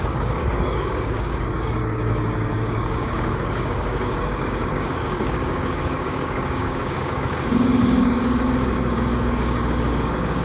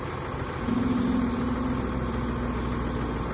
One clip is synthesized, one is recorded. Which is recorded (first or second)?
second